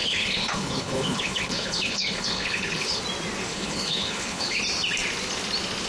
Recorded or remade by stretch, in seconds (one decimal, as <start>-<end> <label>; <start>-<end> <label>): 0.0-3.0 remade; 3.0-3.5 recorded; 3.5-4.6 remade; 4.6-5.9 recorded